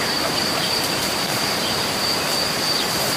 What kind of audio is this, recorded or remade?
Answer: remade